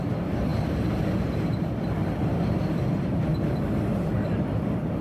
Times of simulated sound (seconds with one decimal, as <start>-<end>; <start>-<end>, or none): 0.0-0.5; 2.5-3.3; 3.8-5.0